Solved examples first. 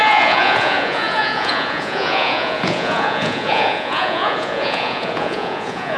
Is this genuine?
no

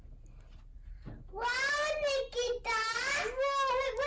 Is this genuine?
yes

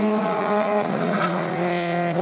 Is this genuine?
no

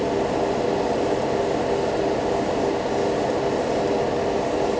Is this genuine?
yes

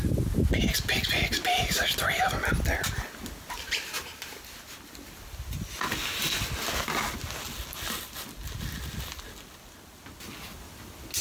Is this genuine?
yes